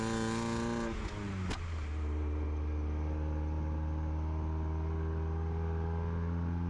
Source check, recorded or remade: recorded